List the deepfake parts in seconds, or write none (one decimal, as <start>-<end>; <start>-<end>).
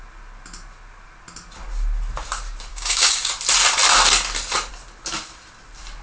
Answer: 2.7-3.3